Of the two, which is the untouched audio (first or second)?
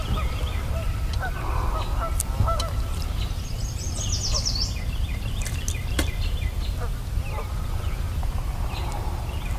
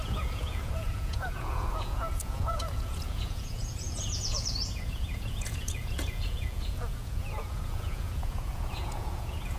first